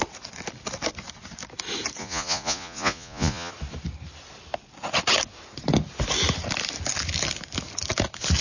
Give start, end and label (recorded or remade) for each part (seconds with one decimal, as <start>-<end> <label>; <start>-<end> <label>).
0.0-2.0 recorded; 2.0-3.5 remade; 3.5-8.4 recorded